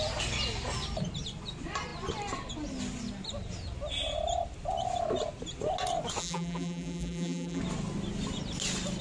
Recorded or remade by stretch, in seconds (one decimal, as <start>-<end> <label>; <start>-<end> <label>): 0.0-6.2 recorded; 6.2-7.6 remade; 7.6-9.0 recorded